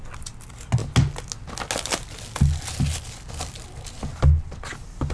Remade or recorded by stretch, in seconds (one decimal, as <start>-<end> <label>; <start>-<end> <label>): 0.0-5.1 recorded